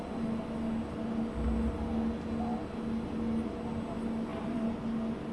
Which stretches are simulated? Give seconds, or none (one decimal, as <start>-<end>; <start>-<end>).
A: 4.3-4.8